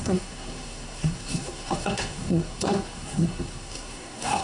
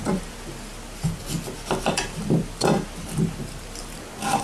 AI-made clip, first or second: first